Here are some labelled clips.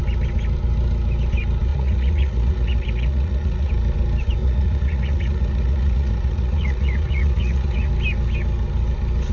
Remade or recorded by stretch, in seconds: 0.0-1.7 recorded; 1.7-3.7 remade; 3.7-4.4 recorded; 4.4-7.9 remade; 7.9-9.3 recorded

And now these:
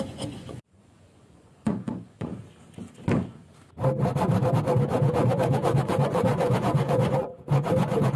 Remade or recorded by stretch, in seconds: 0.0-2.3 remade; 2.3-4.6 recorded; 4.6-8.2 remade

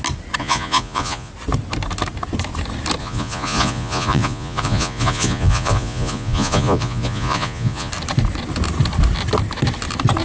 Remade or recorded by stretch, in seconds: 0.0-0.4 recorded; 0.4-1.3 remade; 1.3-3.0 recorded; 3.0-7.9 remade; 7.9-10.2 recorded

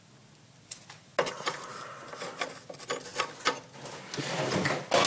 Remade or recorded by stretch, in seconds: 0.0-5.1 recorded